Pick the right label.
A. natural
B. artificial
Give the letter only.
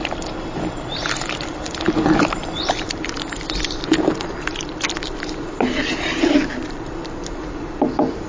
B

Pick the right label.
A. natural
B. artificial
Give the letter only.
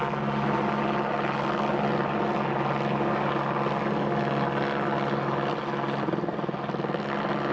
A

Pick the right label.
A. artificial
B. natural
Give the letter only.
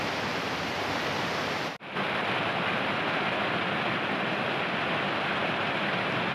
B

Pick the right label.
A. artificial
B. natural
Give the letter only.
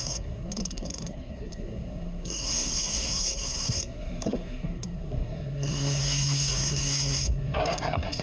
A